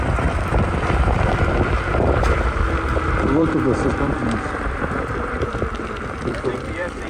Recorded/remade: remade